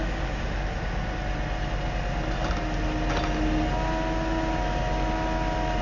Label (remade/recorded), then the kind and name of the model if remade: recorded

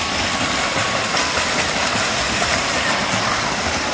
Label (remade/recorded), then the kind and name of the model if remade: recorded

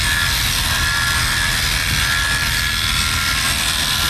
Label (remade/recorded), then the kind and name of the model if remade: recorded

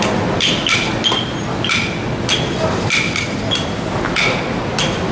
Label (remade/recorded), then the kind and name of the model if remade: recorded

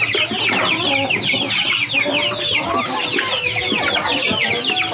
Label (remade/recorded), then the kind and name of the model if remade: recorded